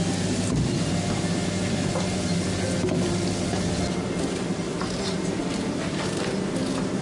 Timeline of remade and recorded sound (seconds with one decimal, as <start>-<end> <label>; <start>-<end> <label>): 0.0-4.7 recorded; 4.7-6.4 remade; 6.4-7.0 recorded